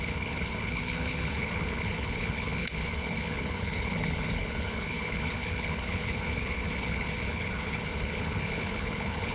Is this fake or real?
fake